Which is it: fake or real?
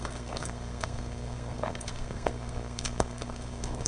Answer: fake